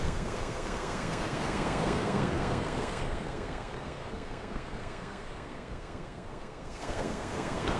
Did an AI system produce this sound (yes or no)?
yes